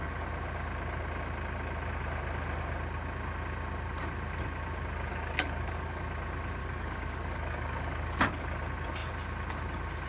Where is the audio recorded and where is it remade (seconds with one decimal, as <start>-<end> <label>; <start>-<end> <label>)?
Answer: 0.0-5.1 recorded; 5.1-6.0 remade; 6.0-6.6 recorded; 6.6-8.3 remade; 8.3-10.1 recorded